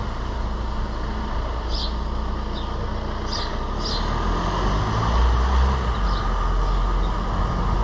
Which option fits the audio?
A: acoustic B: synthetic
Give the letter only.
A